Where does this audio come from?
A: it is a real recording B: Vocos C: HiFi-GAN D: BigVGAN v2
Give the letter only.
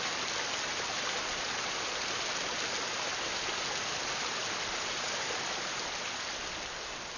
A